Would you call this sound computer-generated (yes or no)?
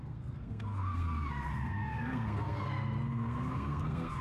yes